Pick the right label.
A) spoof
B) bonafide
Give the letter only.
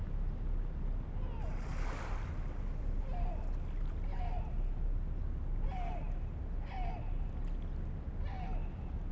B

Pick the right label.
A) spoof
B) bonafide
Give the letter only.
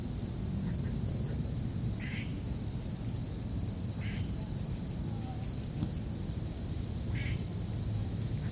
B